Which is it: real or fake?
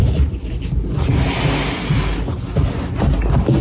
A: real